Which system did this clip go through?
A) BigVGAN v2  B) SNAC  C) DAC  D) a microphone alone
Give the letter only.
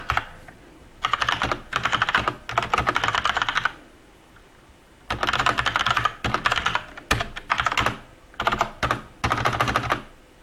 D